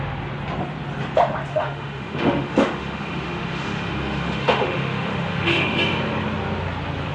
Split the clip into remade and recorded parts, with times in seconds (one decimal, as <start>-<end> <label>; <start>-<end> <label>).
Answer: 0.0-1.5 recorded; 1.5-5.8 remade; 5.8-7.1 recorded